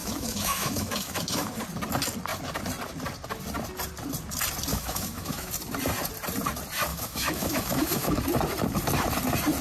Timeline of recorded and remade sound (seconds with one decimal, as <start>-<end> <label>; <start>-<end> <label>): 0.0-1.6 remade; 1.6-4.7 recorded; 4.7-5.5 remade; 5.5-6.9 recorded; 6.9-8.2 remade; 8.2-9.6 recorded